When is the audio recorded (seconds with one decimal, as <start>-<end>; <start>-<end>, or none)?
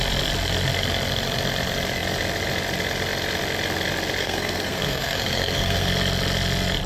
0.0-4.2; 5.9-6.9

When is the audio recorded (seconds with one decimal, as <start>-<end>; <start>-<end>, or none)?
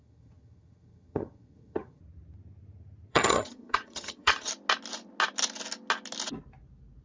2.0-3.1; 4.5-7.0